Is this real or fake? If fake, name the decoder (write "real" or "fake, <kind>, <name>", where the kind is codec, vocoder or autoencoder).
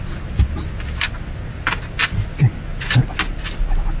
real